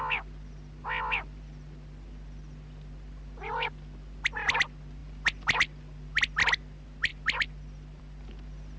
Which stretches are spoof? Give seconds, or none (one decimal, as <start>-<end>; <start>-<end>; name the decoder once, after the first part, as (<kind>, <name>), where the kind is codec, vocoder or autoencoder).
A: none